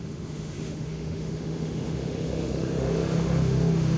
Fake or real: fake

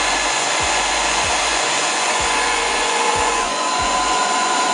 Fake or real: fake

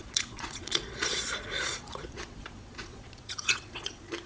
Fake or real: fake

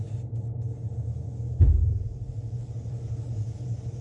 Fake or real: real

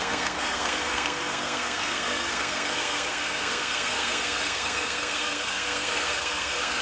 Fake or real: fake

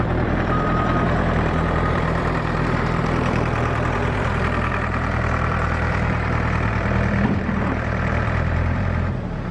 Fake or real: fake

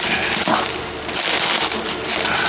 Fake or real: real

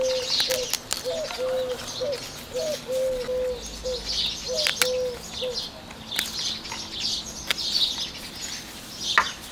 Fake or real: real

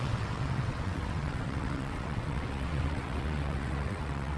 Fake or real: fake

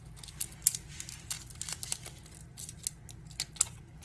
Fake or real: real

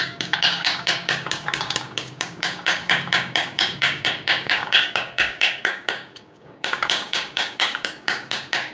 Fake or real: fake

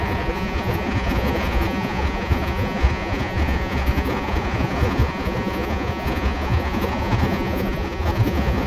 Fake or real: fake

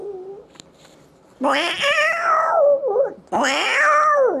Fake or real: real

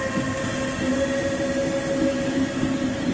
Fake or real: real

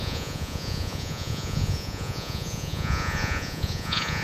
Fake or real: fake